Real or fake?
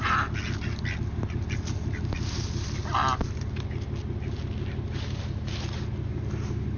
real